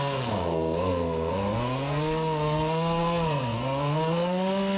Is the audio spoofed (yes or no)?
yes